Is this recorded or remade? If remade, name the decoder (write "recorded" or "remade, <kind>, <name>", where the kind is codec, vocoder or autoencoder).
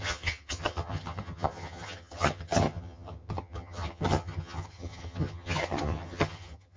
remade, vocoder, HiFi-GAN